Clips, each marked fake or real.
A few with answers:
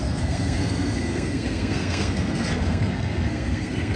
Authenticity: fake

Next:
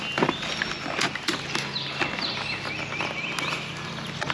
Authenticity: real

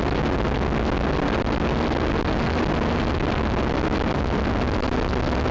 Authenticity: real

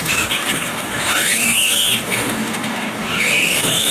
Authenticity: fake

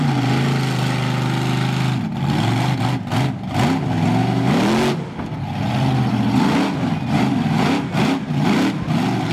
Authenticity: real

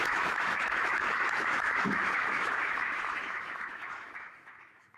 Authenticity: fake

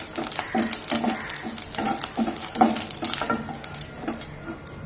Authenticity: real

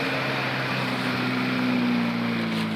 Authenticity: real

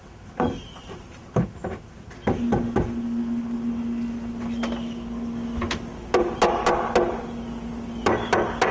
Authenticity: real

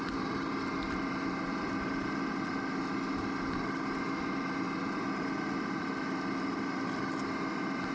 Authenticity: real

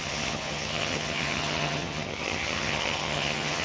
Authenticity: fake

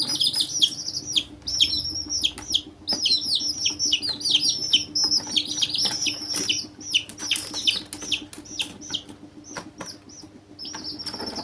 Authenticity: real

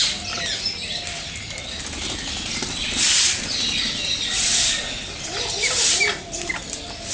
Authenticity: real